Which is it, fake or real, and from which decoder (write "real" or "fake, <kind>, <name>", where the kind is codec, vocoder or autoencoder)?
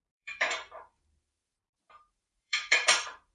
fake, vocoder, BigVGAN v2